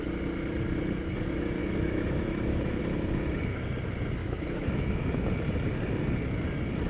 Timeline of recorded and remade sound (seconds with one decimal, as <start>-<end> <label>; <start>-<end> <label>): 0.0-1.6 recorded; 1.6-2.8 remade; 2.8-4.2 recorded; 4.2-5.0 remade; 5.0-6.9 recorded